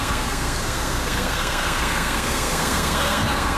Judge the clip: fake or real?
fake